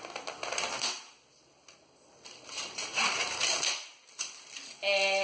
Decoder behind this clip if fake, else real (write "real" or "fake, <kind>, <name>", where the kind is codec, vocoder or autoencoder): real